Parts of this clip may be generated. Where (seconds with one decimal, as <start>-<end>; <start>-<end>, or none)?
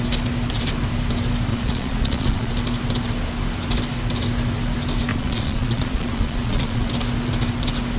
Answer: 1.5-2.5; 5.1-6.9